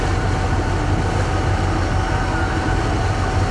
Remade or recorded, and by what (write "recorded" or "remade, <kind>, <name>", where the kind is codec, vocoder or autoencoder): recorded